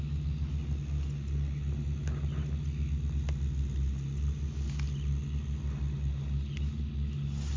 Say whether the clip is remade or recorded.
recorded